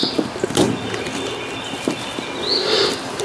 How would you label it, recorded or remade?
recorded